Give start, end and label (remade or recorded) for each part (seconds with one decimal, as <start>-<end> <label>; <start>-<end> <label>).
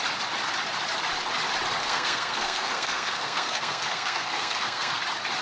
0.0-1.8 recorded; 1.8-5.0 remade; 5.0-5.4 recorded